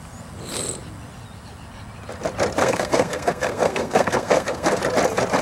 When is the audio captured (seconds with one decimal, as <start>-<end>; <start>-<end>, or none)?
0.0-2.6; 4.8-5.4